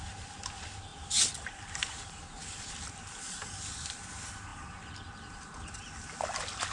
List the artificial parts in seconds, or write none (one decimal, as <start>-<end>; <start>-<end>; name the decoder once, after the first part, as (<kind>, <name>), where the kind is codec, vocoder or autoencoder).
none